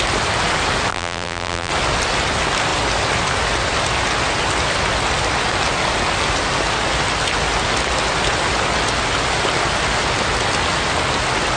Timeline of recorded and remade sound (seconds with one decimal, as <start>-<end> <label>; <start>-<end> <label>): 0.0-0.9 recorded; 0.9-1.7 remade; 1.7-11.6 recorded